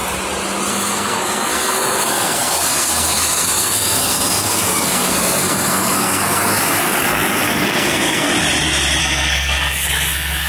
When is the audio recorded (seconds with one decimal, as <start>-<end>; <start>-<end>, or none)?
0.0-0.7; 8.3-9.0